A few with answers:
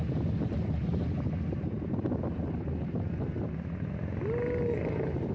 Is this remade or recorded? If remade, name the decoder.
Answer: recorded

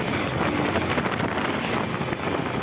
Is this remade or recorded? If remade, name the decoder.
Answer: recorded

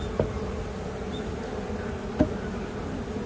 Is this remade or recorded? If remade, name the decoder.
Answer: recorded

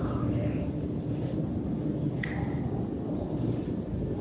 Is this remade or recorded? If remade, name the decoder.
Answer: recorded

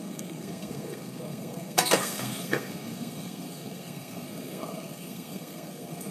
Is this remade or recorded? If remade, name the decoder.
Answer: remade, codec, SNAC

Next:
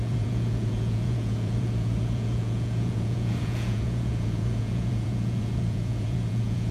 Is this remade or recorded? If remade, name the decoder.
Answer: remade, vocoder, Vocos